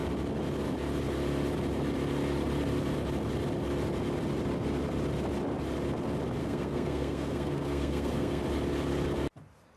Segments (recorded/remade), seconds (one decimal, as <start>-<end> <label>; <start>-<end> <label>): 0.0-6.4 recorded; 6.4-8.4 remade; 8.4-9.8 recorded